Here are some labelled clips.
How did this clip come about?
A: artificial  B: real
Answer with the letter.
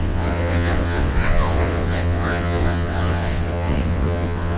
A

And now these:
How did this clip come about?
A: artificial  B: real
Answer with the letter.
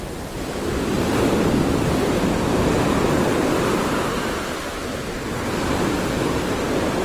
B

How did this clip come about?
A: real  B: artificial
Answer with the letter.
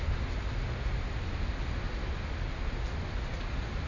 A